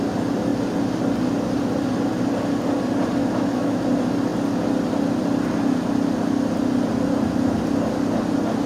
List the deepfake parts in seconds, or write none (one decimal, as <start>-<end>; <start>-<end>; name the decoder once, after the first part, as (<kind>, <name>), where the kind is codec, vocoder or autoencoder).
3.2-3.8 (autoencoder, DAC-VAE)